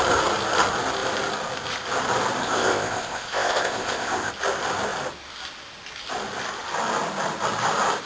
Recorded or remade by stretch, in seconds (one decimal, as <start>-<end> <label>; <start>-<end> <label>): 0.0-2.4 recorded; 2.4-4.3 remade; 4.3-8.1 recorded